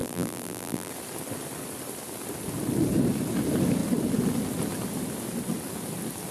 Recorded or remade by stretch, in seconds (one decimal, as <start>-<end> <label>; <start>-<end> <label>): 0.0-0.9 remade; 0.9-6.3 recorded